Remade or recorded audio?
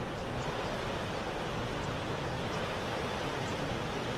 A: recorded